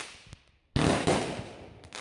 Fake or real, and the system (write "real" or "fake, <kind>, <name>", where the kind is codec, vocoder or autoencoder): real